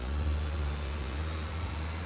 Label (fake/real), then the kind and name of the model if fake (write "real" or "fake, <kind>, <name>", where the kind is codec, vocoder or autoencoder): fake, vocoder, Vocos